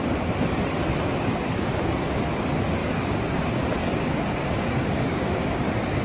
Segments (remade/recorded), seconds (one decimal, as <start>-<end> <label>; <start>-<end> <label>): 0.0-0.9 recorded; 0.9-1.9 remade; 1.9-2.8 recorded; 2.8-3.4 remade; 3.4-3.8 recorded; 3.8-5.6 remade; 5.6-6.0 recorded